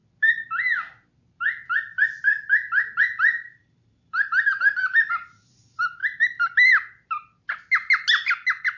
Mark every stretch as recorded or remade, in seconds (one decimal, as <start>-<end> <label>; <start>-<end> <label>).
0.0-3.0 recorded; 3.0-6.0 remade; 6.0-8.8 recorded